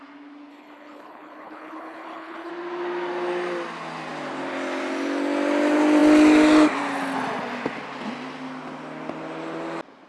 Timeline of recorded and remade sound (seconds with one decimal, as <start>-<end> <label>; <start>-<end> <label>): 0.0-0.5 recorded; 0.5-2.5 remade; 2.5-10.1 recorded